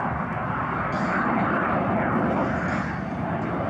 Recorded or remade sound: recorded